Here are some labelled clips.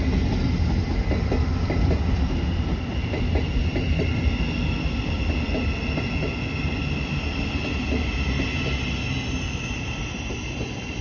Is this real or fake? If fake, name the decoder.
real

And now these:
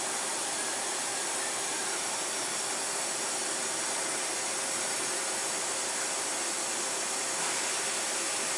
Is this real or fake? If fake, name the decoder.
fake, vocoder, BigVGAN v2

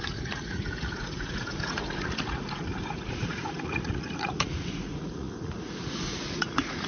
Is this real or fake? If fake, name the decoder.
fake, vocoder, Vocos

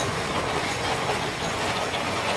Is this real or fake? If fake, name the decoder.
fake, vocoder, Vocos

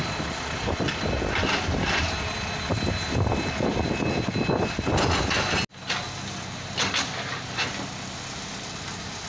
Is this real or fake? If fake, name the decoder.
real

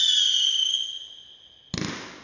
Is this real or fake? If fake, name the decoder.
real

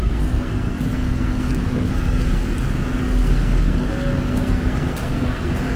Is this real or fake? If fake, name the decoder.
fake, codec, SNAC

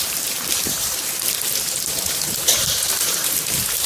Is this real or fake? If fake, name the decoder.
fake, vocoder, BigVGAN v2